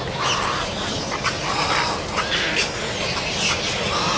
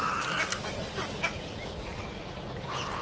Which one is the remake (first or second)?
second